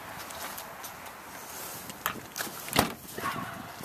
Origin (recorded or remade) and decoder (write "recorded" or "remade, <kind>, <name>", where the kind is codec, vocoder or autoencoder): recorded